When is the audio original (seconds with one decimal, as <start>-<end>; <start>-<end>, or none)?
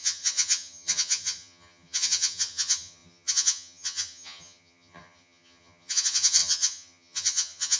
none